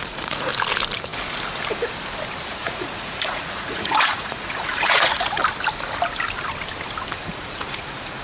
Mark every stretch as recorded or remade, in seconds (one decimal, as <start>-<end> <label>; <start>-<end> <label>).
0.0-0.5 remade; 0.5-2.6 recorded; 2.6-5.4 remade; 5.4-7.2 recorded; 7.2-8.2 remade